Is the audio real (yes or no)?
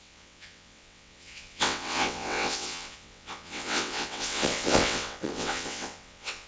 no